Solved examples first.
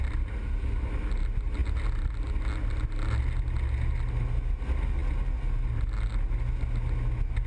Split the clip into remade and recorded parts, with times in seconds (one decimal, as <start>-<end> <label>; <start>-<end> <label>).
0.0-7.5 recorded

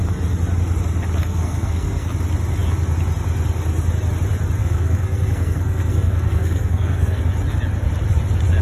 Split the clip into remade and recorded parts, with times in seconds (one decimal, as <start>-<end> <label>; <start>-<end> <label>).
0.0-1.2 recorded; 1.2-2.1 remade; 2.1-4.6 recorded; 4.6-7.2 remade; 7.2-8.6 recorded

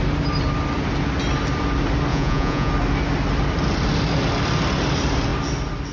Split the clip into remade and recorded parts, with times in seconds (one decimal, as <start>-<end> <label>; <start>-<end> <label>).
0.0-2.1 recorded; 2.1-2.7 remade; 2.7-5.9 recorded

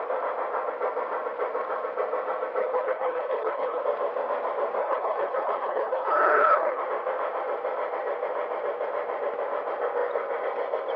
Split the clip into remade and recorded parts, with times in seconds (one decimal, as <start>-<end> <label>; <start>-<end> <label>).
0.0-2.6 recorded; 2.6-3.8 remade; 3.8-4.8 recorded; 4.8-6.8 remade; 6.8-11.0 recorded

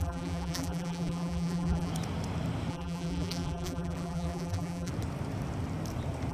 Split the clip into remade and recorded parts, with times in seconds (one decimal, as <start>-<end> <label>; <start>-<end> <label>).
0.0-1.9 remade; 1.9-2.7 recorded; 2.7-4.9 remade; 4.9-6.3 recorded